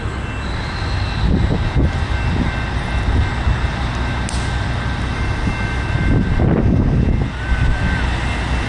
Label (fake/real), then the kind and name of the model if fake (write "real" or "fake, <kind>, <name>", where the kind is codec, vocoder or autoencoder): real